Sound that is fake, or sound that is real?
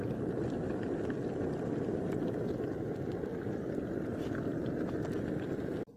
real